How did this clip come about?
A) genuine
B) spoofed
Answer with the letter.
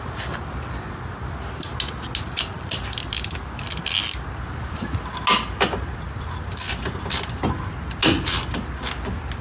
A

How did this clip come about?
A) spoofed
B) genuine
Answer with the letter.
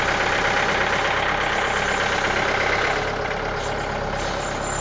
B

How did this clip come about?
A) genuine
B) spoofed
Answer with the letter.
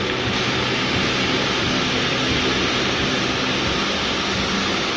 A